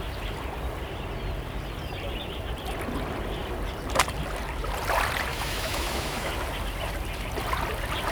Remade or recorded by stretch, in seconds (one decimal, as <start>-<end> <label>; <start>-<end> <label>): 0.0-5.3 recorded; 5.3-6.3 remade; 6.3-8.1 recorded